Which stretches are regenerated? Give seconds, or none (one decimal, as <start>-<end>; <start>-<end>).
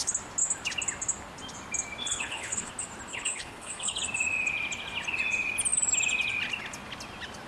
2.0-2.7; 3.1-4.0